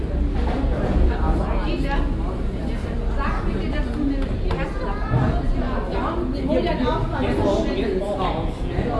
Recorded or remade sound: recorded